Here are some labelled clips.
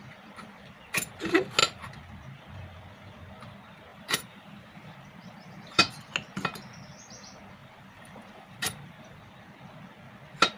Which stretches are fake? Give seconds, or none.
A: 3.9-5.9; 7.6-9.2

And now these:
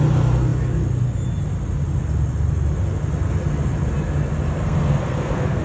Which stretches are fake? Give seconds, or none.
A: 4.6-5.6

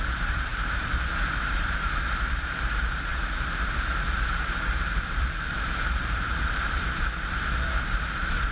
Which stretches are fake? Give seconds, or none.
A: 0.0-8.5

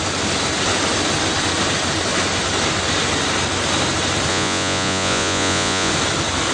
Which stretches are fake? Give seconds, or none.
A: 4.3-5.9